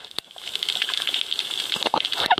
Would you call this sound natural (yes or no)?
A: no